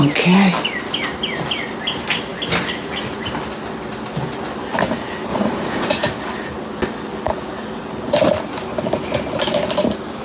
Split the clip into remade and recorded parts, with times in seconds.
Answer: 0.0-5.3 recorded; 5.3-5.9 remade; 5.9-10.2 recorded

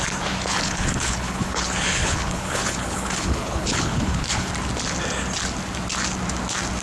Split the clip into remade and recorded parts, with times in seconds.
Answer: 0.0-0.5 recorded; 0.5-4.5 remade; 4.5-6.8 recorded